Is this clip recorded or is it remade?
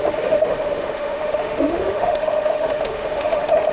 remade